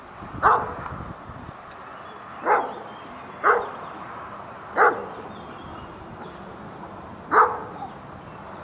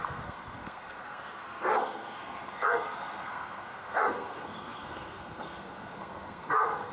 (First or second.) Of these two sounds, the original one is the first